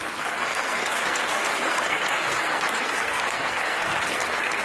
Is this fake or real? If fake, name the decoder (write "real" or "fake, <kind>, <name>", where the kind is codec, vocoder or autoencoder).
fake, codec, SNAC